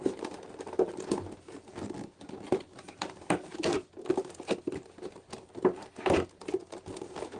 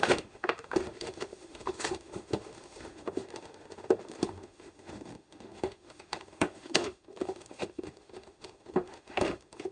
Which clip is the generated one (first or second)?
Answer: second